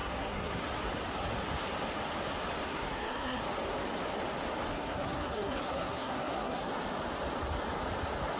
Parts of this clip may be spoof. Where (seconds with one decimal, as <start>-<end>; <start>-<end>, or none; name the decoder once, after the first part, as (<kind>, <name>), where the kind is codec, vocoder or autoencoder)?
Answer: 0.0-0.6 (codec, SNAC); 2.7-3.4; 4.7-6.7